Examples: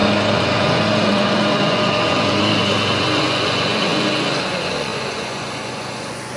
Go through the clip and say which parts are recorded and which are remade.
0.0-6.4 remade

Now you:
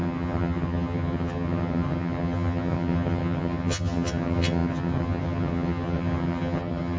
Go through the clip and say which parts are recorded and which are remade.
0.0-7.0 remade